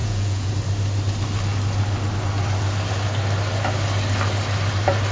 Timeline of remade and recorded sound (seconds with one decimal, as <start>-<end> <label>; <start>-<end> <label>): 0.0-0.5 remade; 0.5-5.1 recorded